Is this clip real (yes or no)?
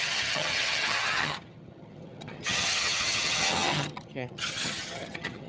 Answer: no